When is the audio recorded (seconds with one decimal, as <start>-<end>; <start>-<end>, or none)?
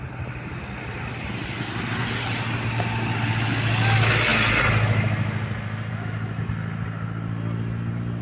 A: 0.0-8.2